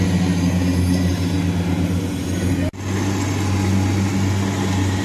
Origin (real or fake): real